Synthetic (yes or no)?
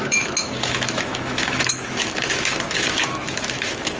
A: yes